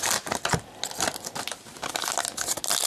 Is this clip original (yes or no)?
yes